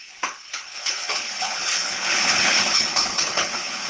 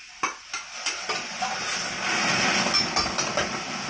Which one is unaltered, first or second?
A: second